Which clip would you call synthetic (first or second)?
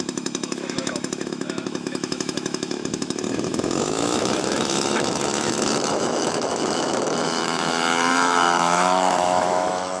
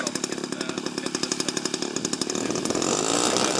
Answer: first